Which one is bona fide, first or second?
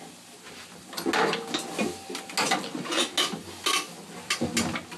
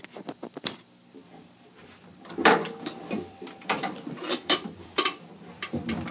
first